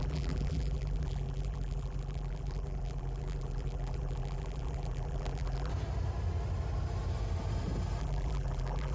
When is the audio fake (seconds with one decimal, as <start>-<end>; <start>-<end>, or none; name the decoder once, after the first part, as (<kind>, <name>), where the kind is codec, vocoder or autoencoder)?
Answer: 0.0-5.7 (vocoder, BigVGAN v2); 8.0-8.9